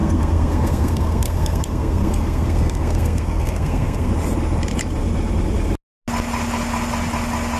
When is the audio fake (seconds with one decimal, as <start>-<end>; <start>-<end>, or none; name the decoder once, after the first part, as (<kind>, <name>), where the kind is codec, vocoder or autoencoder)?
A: 0.0-4.1 (codec, SNAC)